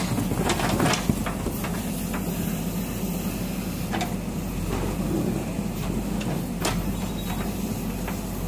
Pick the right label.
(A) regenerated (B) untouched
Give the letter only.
B